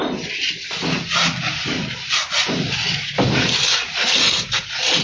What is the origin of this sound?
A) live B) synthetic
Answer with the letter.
A